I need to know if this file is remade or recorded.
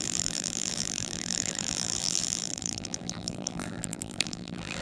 remade